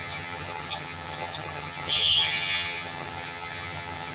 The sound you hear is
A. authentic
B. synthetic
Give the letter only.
B